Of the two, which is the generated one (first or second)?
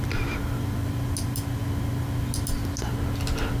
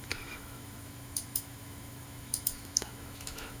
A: second